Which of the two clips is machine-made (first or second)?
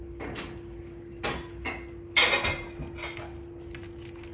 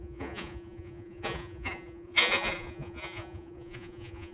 second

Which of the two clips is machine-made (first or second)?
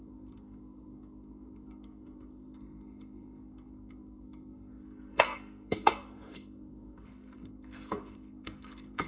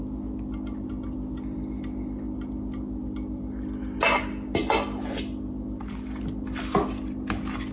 first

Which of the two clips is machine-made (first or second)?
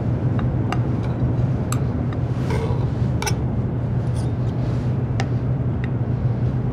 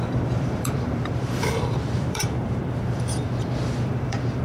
second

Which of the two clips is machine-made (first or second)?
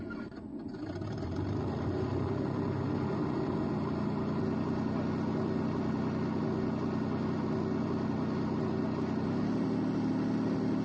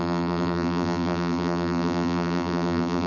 second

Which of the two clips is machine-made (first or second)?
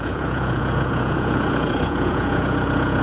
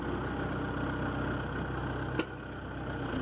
first